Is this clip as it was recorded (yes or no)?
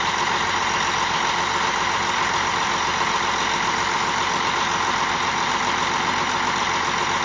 yes